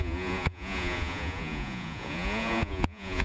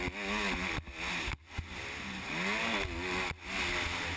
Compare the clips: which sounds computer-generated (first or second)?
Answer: first